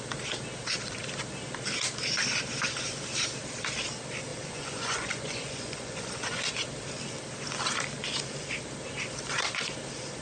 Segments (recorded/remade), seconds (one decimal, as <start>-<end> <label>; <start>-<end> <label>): 0.0-4.3 recorded; 4.3-6.5 remade; 6.5-10.2 recorded